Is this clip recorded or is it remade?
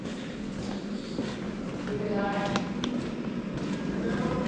recorded